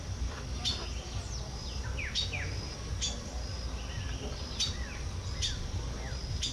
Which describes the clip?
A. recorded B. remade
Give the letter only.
A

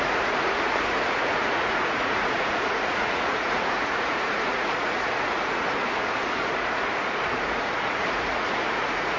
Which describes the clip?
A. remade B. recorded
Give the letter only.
A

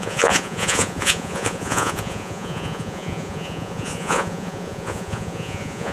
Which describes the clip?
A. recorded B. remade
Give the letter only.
B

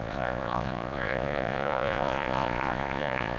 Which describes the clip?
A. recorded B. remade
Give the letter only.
B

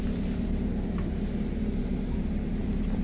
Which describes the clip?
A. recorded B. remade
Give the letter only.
A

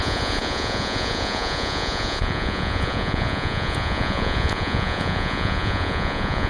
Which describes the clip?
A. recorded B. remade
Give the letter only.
B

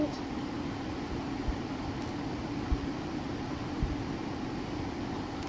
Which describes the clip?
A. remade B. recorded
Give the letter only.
B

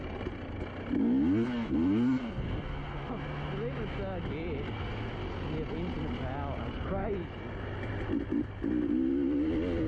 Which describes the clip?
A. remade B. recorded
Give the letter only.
B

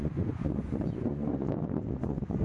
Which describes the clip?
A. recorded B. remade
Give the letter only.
B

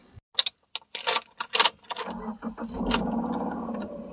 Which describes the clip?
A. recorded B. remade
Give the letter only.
A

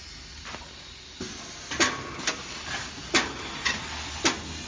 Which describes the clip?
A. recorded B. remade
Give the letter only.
A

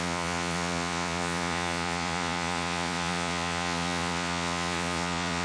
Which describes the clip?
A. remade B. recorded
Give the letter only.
A